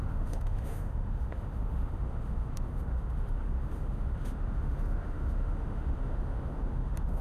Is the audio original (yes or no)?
no